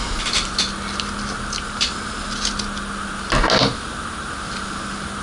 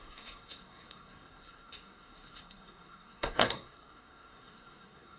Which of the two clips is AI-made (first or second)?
second